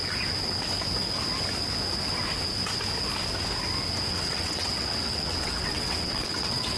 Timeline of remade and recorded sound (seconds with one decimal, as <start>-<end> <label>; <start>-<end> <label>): 0.0-4.1 recorded; 4.1-6.8 remade